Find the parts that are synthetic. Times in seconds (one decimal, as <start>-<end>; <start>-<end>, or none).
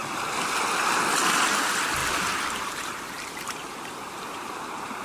2.0-5.0